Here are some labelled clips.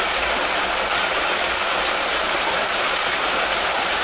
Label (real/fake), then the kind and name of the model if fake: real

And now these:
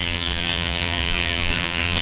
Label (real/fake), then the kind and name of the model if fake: fake, vocoder, BigVGAN v2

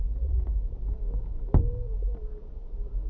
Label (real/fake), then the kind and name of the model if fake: real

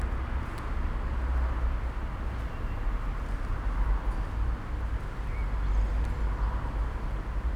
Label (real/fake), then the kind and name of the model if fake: real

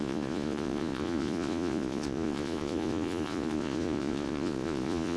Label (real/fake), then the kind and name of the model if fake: fake, vocoder, Vocos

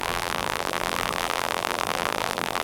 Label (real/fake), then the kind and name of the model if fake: fake, vocoder, BigVGAN v2